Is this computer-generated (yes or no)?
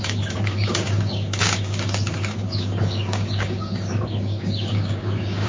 yes